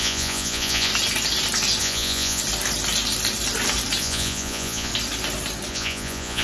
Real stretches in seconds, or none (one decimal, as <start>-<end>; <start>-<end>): 0.9-1.8; 2.4-4.0; 4.9-5.7